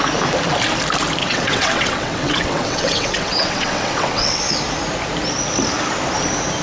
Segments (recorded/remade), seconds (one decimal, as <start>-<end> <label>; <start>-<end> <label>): 0.0-1.2 recorded; 1.2-4.4 remade; 4.4-6.6 recorded